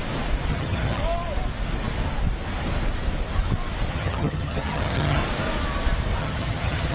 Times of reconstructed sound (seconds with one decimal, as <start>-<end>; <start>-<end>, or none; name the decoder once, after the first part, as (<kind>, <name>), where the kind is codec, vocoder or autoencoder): 0.5-1.0 (vocoder, HiFi-GAN); 3.9-5.2; 6.2-6.9